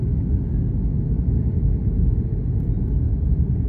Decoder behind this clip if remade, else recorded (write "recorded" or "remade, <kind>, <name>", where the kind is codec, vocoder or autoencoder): recorded